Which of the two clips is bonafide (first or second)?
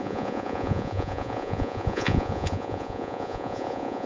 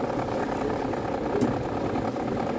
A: second